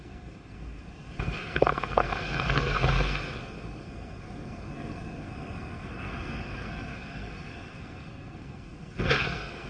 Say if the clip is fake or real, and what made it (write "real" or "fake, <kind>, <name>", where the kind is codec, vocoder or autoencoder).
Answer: fake, codec, SNAC